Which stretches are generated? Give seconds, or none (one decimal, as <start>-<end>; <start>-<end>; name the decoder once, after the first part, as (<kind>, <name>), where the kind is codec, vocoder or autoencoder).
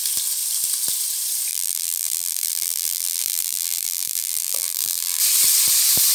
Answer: 1.5-5.2 (vocoder, BigVGAN v2)